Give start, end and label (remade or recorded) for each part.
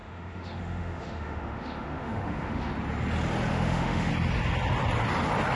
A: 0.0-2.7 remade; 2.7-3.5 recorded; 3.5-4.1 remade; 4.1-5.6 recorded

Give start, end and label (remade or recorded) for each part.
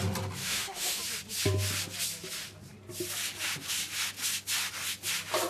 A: 0.0-0.4 recorded; 0.4-1.0 remade; 1.0-5.5 recorded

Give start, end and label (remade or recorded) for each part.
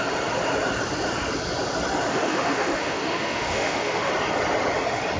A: 0.0-2.1 recorded; 2.1-4.1 remade; 4.1-5.2 recorded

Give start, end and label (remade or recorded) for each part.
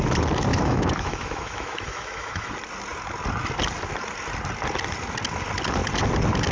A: 0.0-0.5 recorded; 0.5-2.5 remade; 2.5-6.5 recorded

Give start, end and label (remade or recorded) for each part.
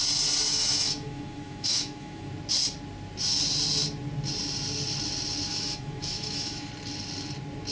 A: 0.0-0.5 recorded; 0.5-2.3 remade; 2.3-5.5 recorded; 5.5-6.7 remade; 6.7-7.7 recorded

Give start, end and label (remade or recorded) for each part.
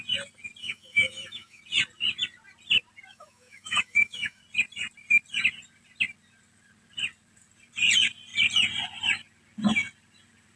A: 0.0-0.6 recorded; 0.6-1.6 remade; 1.6-3.1 recorded; 3.1-4.4 remade; 4.4-10.6 recorded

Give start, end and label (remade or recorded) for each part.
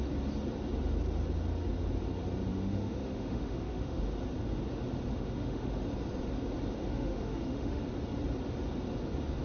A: 0.0-2.5 recorded; 2.5-4.0 remade; 4.0-5.1 recorded; 5.1-5.8 remade; 5.8-6.8 recorded; 6.8-7.8 remade; 7.8-9.4 recorded